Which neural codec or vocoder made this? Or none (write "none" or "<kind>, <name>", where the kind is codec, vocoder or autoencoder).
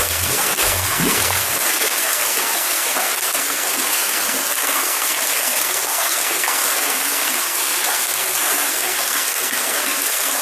codec, SNAC